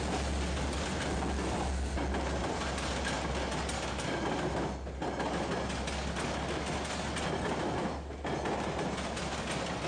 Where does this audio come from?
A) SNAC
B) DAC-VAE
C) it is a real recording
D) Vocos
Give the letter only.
C